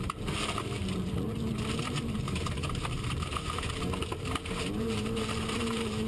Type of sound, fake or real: fake